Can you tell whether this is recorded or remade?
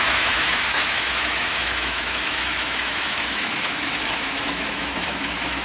remade